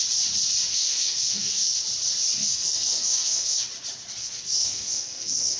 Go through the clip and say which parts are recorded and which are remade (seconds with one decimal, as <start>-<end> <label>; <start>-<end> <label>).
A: 0.0-0.7 recorded; 0.7-1.8 remade; 1.8-2.4 recorded; 2.4-3.6 remade; 3.6-4.2 recorded; 4.2-5.6 remade